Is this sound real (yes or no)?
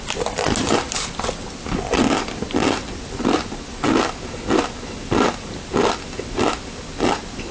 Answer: yes